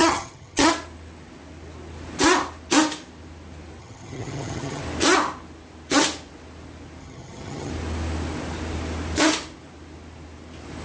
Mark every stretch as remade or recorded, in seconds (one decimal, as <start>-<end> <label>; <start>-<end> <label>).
0.0-0.7 remade; 0.7-3.8 recorded; 3.8-4.8 remade; 4.8-7.0 recorded; 7.0-7.7 remade; 7.7-10.8 recorded